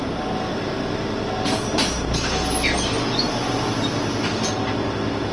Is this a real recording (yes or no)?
yes